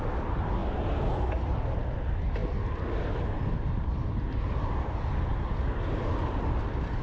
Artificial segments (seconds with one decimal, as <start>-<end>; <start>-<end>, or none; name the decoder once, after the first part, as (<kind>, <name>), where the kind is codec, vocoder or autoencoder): none